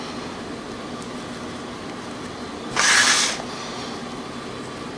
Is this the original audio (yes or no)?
yes